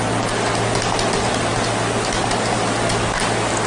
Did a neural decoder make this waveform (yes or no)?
no